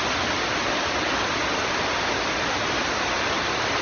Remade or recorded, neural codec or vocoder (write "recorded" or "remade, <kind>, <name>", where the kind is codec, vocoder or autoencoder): recorded